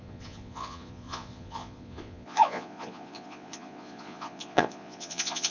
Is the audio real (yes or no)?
no